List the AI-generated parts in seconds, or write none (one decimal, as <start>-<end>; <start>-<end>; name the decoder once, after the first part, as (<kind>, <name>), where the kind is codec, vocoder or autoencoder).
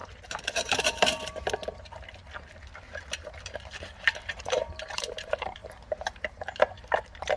0.0-2.2 (vocoder, BigVGAN v2); 4.2-7.4